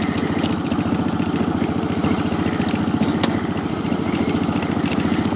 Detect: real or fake real